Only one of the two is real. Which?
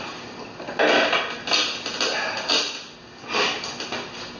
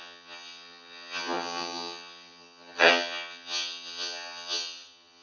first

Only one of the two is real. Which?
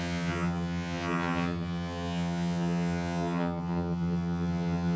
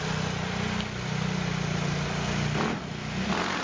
second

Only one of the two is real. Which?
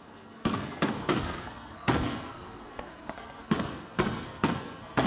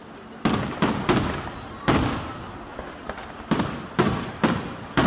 second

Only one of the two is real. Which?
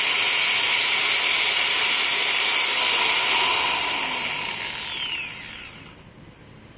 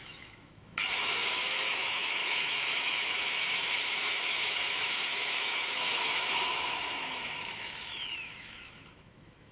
first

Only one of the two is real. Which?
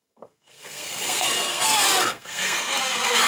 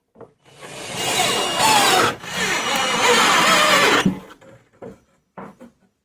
second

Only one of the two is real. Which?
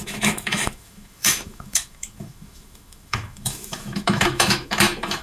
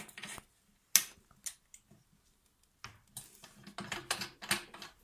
second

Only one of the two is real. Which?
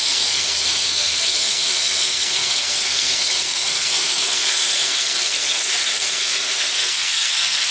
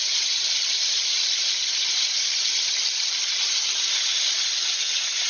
second